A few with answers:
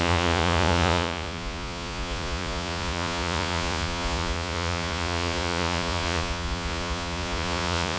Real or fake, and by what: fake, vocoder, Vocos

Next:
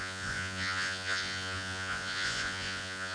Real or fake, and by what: fake, vocoder, Vocos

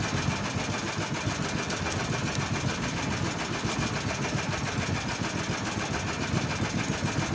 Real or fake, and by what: real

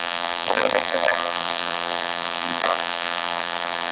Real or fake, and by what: fake, vocoder, BigVGAN v2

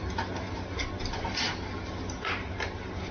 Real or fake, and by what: real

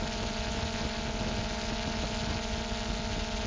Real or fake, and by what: real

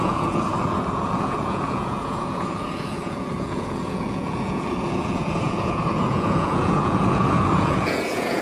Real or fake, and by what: fake, vocoder, Vocos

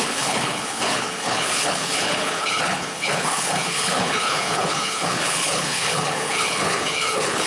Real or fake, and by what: fake, codec, HILCodec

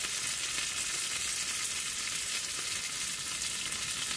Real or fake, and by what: real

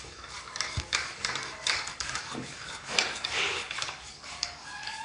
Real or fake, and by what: fake, codec, DAC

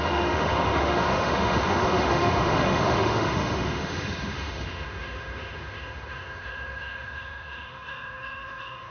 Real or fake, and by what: fake, autoencoder, DAC-VAE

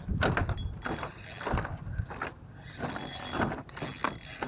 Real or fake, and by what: real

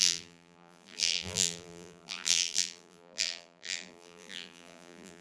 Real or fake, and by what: fake, vocoder, BigVGAN v2